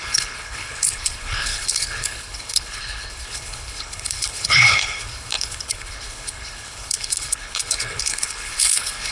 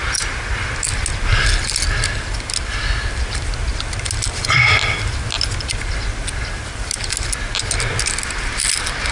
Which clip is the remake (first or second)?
first